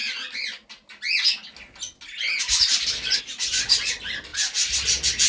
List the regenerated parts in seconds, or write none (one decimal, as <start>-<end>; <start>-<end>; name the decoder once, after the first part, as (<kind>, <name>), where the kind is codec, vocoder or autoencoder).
none